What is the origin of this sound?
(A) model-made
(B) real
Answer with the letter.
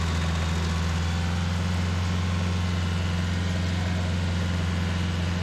B